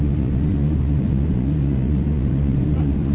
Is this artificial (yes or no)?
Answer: yes